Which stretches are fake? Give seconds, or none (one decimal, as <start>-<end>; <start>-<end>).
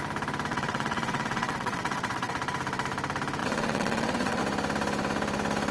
0.5-2.3; 3.4-4.4